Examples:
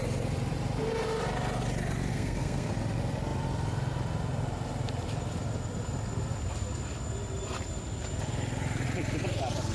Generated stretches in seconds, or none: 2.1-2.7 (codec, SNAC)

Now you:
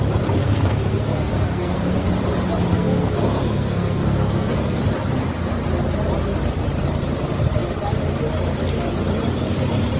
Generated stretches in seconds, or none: 0.4-2.1 (codec, SNAC); 2.7-4.8

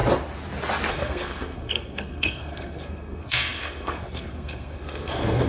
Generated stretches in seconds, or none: 0.9-5.5 (codec, SNAC)

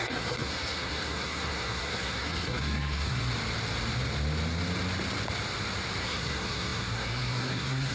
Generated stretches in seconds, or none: 0.0-3.2 (codec, SNAC); 6.0-7.9